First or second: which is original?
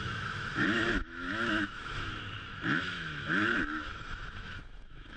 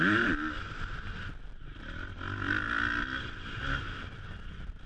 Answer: second